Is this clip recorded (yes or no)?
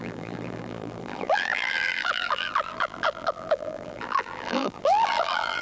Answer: no